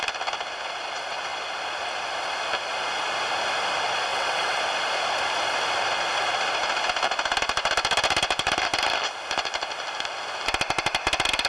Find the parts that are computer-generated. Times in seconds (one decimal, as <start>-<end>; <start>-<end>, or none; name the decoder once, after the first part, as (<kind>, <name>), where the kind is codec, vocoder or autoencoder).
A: 4.1-4.6 (vocoder, WaveNeXt)